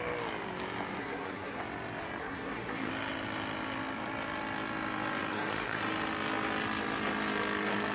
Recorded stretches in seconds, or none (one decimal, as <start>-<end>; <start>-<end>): 0.0-1.0; 1.6-2.2; 2.9-5.3; 5.8-7.9